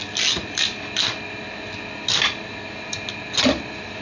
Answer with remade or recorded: recorded